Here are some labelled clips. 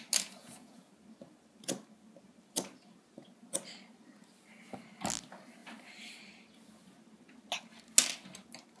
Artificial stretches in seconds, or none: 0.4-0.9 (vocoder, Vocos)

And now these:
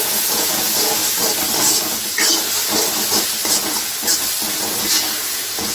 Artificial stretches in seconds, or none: 0.0-1.0 (vocoder, Vocos); 3.5-3.9; 4.9-5.7

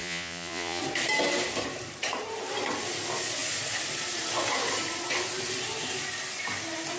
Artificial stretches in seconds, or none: 0.0-0.8 (vocoder, Vocos)

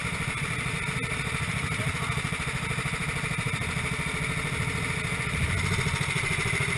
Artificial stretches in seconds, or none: none

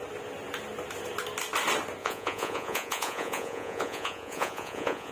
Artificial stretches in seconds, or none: 2.0-5.1 (vocoder, Vocos)

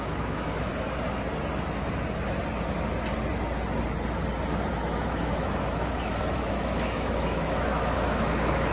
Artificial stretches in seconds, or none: 0.0-0.7 (autoencoder, DAC-VAE); 4.7-8.7